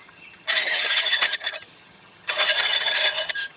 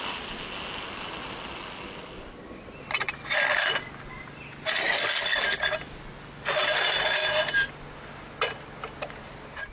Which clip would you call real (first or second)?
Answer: second